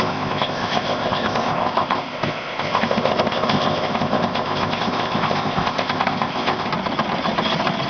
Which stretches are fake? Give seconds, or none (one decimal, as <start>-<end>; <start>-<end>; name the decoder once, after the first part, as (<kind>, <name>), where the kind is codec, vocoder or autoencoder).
0.0-6.7 (codec, ZipCodec)

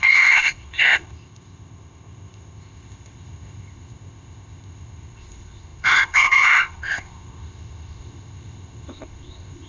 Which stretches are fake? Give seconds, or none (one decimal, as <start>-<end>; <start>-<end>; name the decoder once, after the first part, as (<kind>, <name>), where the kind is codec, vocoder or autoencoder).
0.0-9.7 (codec, ZipCodec)